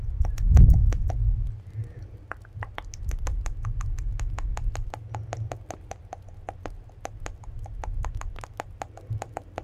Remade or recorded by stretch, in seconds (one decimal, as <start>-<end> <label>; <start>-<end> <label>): 0.0-9.6 recorded